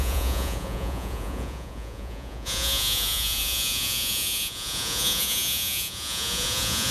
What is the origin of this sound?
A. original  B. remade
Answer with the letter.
B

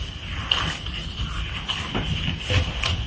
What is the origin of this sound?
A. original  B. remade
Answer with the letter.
A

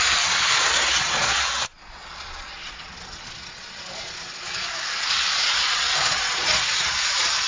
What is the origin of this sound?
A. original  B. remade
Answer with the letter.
B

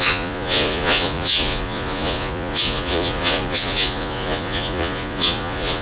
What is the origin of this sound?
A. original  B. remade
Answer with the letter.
B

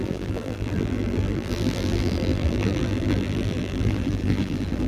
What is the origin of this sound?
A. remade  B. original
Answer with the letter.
A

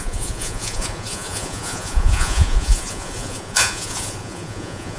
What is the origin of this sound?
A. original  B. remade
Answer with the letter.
B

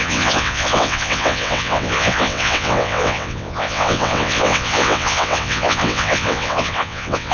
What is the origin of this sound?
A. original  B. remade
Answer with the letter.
B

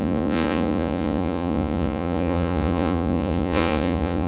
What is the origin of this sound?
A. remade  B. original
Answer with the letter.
A